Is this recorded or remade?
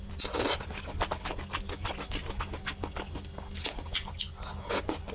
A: recorded